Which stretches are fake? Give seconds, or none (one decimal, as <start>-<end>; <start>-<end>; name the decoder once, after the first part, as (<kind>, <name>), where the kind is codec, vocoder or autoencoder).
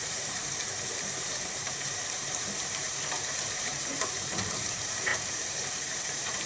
0.0-0.4 (vocoder, BigVGAN v2); 1.0-6.5